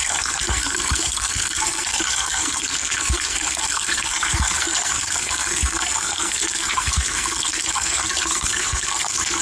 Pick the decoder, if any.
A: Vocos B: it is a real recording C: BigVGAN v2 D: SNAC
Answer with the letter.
D